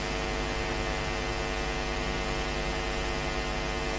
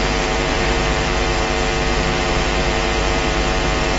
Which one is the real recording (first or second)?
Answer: first